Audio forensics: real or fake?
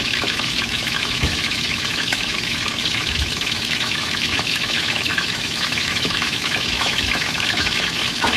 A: fake